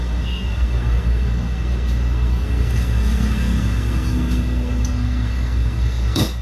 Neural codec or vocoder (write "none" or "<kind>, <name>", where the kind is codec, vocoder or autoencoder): codec, SNAC